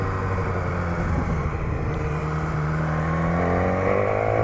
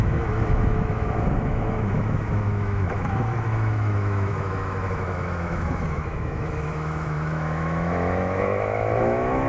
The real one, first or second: first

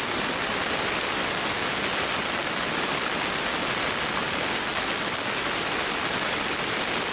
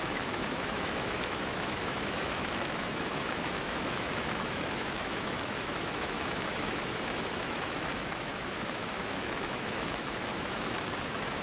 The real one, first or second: first